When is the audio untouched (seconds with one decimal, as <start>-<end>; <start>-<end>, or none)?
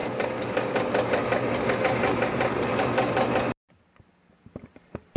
0.0-1.8; 2.7-4.4